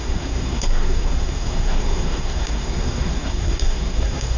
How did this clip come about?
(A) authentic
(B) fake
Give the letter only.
B